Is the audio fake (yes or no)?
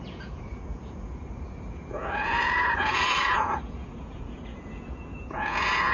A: yes